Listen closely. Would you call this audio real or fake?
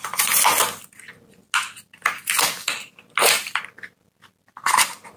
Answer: real